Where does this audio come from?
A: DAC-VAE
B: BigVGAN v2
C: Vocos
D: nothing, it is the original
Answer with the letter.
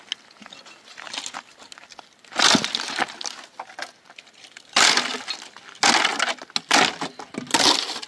D